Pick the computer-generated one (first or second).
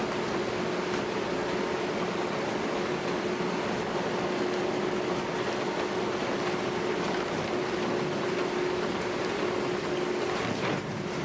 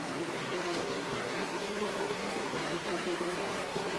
second